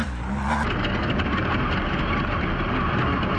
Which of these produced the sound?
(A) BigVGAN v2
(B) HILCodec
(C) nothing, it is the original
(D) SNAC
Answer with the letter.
C